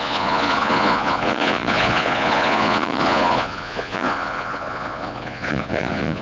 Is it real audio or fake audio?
fake